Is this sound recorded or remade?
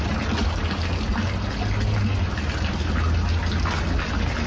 recorded